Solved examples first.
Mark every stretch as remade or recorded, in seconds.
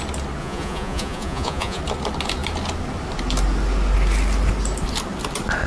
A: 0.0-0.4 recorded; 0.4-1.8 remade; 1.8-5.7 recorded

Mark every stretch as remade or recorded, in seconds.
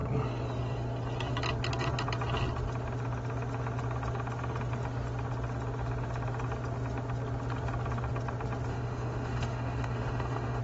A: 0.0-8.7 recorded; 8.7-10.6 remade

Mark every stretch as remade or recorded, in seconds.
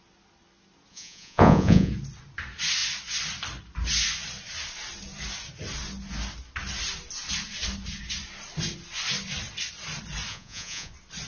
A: 0.0-0.9 recorded; 0.9-1.9 remade; 1.9-10.3 recorded; 10.3-10.9 remade; 10.9-11.3 recorded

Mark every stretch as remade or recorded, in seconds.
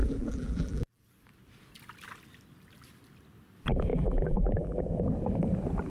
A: 0.0-1.0 remade; 1.0-3.9 recorded; 3.9-4.8 remade; 4.8-5.9 recorded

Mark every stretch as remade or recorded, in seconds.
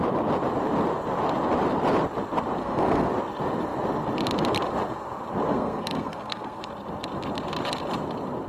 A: 0.0-2.6 recorded; 2.6-3.1 remade; 3.1-5.5 recorded; 5.5-6.6 remade; 6.6-8.5 recorded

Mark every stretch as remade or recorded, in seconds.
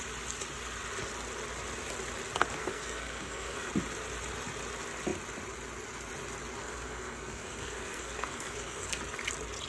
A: 0.0-2.6 recorded; 2.6-3.7 remade; 3.7-6.6 recorded; 6.6-9.0 remade; 9.0-9.7 recorded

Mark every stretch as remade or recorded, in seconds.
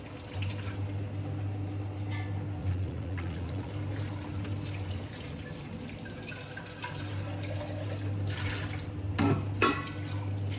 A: 0.0-2.6 recorded; 2.6-3.7 remade; 3.7-10.6 recorded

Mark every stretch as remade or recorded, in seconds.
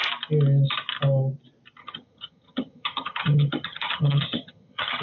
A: 0.0-1.8 recorded; 1.8-5.0 remade